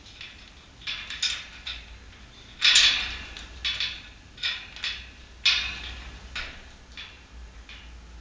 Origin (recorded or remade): recorded